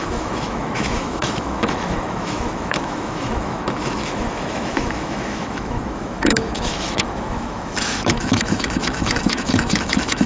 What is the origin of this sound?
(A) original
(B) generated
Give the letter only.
B